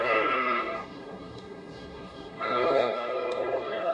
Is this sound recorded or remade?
remade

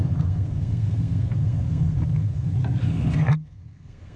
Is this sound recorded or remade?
remade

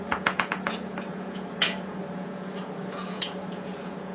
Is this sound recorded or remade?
remade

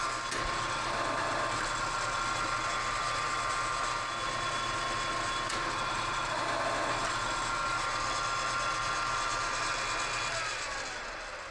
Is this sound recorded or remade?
recorded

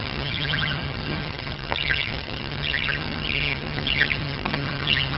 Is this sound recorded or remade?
remade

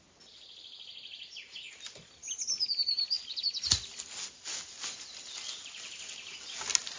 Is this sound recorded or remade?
recorded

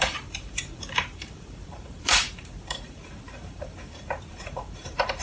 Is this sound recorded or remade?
remade